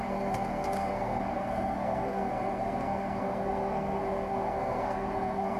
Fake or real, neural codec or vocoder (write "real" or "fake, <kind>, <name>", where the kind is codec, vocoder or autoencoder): fake, codec, SNAC